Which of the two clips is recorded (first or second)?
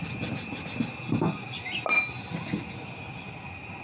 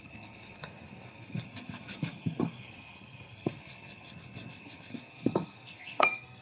first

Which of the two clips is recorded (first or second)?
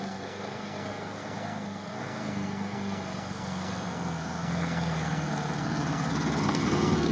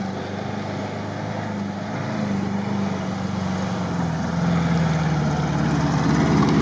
second